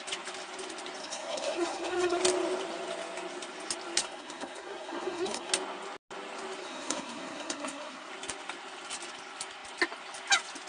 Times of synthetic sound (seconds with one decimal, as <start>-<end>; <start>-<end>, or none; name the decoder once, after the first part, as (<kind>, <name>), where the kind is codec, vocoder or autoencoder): 1.0-2.2 (codec, SNAC); 4.0-5.5; 6.6-8.1